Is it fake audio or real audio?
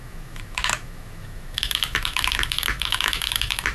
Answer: fake